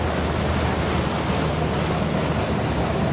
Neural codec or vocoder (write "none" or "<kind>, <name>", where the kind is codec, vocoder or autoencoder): none